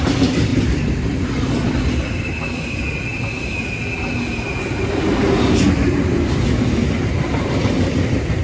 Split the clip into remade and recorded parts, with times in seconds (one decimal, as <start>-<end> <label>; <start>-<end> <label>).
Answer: 0.0-6.8 recorded; 6.8-7.5 remade; 7.5-8.4 recorded